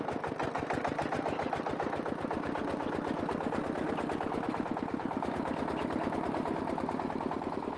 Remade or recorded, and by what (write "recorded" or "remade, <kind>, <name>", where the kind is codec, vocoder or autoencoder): recorded